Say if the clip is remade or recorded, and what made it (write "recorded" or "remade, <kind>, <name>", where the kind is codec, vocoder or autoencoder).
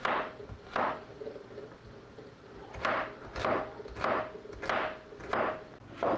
recorded